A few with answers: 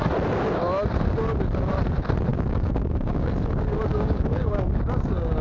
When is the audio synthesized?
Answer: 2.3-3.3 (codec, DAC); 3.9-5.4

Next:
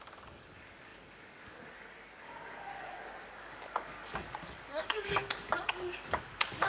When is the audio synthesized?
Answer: 0.0-6.7 (codec, DAC)

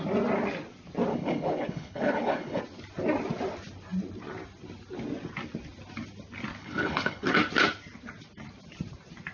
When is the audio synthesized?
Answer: 1.1-2.6 (codec, HILCodec); 6.6-7.3

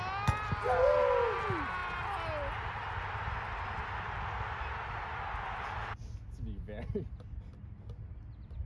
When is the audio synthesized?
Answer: none

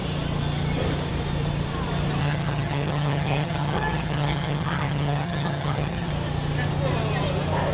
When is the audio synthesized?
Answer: 2.2-6.1 (vocoder, HiFi-GAN)

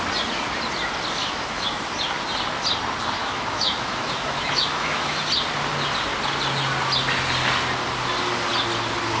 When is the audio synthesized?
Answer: 1.2-1.8 (autoencoder, DAC-VAE); 3.2-5.2

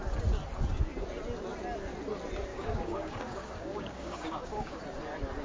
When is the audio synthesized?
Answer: 2.5-4.8 (codec, DAC)

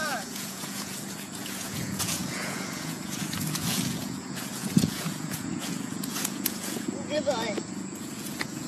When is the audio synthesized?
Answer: 0.0-8.7 (vocoder, Vocos)